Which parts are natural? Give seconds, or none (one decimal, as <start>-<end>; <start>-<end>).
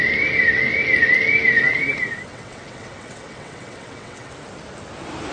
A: 0.0-2.3; 4.3-5.3